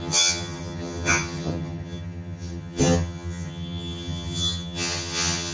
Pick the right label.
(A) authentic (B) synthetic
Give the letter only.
B